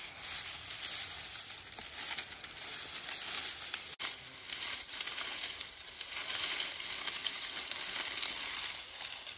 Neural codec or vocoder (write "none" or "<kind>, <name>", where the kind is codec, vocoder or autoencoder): none